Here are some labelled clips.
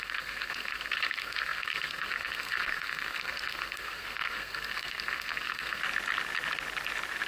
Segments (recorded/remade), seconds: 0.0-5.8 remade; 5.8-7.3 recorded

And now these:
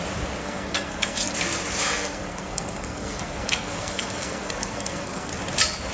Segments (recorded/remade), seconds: 0.0-0.4 recorded; 0.4-1.3 remade; 1.3-1.8 recorded; 1.8-5.3 remade; 5.3-5.9 recorded

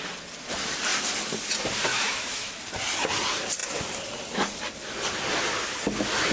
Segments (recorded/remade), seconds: 0.0-1.9 recorded; 1.9-2.5 remade; 2.5-6.3 recorded

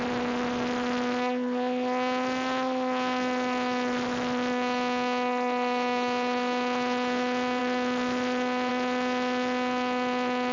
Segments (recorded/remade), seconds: 0.0-10.5 recorded